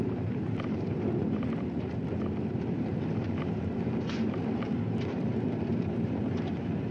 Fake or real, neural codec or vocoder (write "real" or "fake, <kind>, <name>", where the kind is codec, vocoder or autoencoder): fake, vocoder, BigVGAN v2